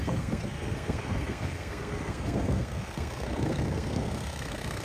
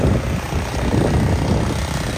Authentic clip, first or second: second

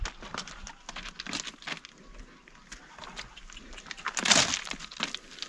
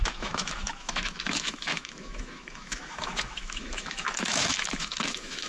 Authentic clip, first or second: first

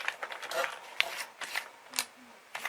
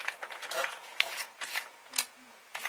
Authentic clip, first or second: first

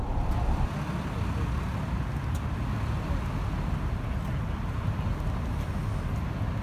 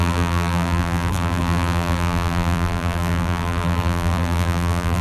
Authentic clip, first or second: first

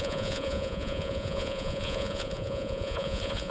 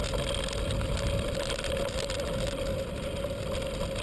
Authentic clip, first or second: second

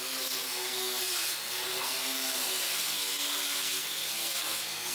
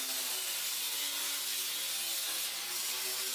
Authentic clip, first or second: second